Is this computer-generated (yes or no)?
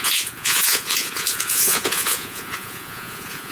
yes